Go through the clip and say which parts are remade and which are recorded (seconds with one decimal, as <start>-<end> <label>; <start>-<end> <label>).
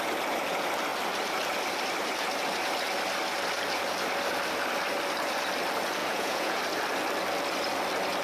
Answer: 0.0-6.0 recorded; 6.0-6.6 remade; 6.6-8.2 recorded